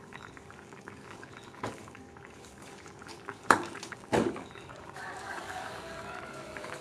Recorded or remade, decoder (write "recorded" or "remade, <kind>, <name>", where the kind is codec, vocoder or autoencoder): remade, codec, DAC